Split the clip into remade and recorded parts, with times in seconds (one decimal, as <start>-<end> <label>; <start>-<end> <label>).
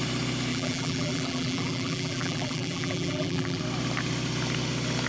0.0-0.5 recorded; 0.5-3.6 remade; 3.6-5.1 recorded